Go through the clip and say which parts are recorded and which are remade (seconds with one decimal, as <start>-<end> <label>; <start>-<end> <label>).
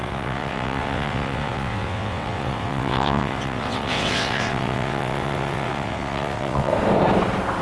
0.0-6.7 remade; 6.7-7.6 recorded